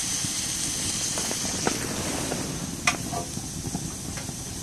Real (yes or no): yes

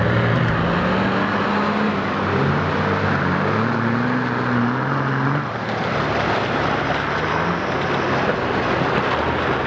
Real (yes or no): yes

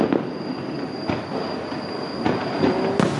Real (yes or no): yes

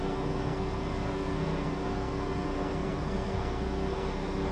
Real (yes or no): no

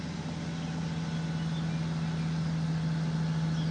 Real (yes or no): yes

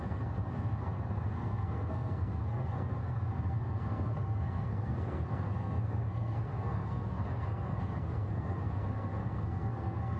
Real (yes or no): no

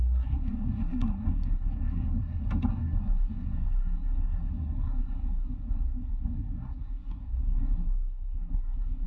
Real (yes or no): no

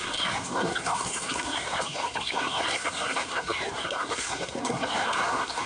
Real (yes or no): no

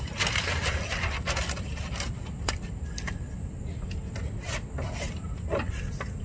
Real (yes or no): yes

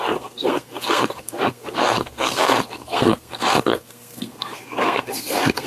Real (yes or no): no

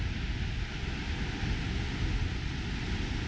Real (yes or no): yes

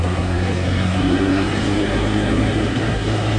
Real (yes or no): no